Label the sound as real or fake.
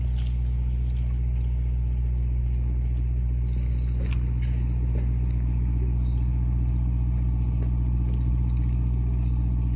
real